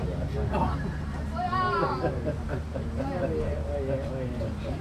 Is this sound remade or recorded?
recorded